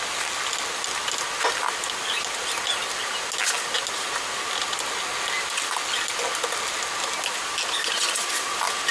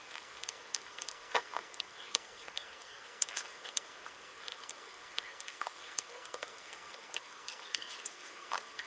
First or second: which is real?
first